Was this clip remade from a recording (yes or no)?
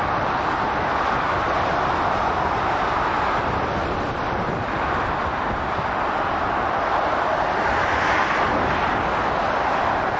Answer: yes